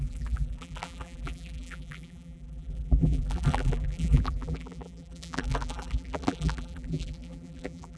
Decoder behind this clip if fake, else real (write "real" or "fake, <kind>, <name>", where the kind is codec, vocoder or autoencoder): fake, vocoder, BigVGAN v2